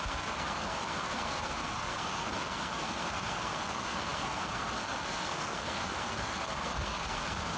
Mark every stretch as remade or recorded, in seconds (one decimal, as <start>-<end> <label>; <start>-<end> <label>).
0.0-7.6 remade